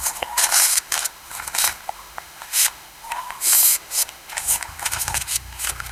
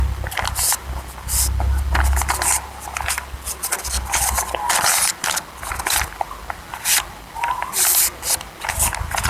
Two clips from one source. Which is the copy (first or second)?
first